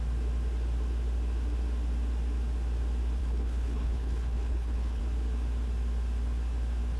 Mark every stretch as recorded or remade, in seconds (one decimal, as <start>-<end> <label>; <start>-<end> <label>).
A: 0.0-3.2 recorded; 3.2-5.0 remade; 5.0-7.0 recorded